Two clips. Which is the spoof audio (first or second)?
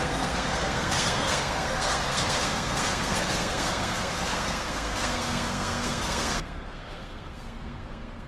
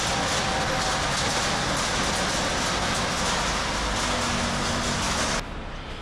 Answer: first